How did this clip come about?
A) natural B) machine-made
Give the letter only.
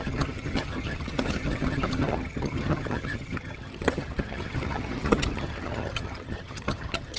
B